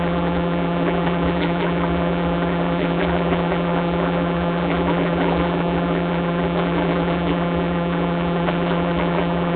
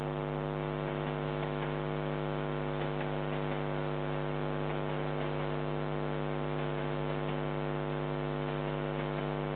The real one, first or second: second